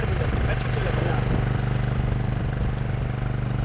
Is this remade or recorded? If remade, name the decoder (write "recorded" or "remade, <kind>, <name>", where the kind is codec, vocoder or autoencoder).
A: recorded